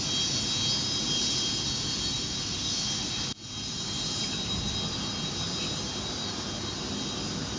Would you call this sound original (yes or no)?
yes